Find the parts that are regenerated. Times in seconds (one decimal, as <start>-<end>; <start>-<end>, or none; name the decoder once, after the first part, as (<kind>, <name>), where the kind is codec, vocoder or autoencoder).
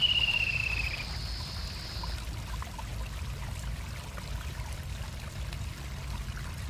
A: none